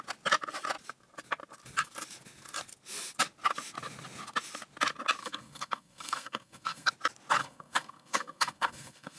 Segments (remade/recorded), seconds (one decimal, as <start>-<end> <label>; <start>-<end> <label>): 0.0-5.2 recorded; 5.2-6.9 remade; 6.9-7.4 recorded; 7.4-9.2 remade